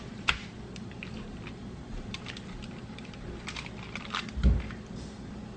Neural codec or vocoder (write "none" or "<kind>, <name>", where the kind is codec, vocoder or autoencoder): none